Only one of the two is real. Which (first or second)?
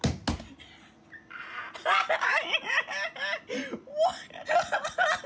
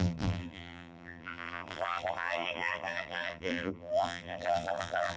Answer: first